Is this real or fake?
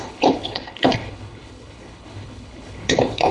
fake